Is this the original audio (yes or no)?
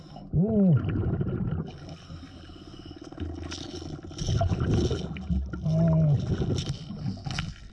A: yes